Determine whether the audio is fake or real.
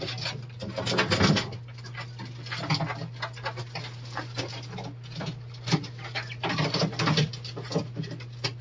real